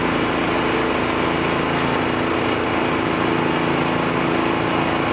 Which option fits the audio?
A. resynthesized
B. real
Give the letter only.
B